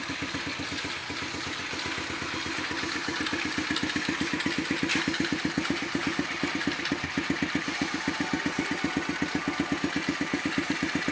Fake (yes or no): no